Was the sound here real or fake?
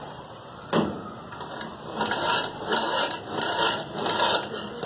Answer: real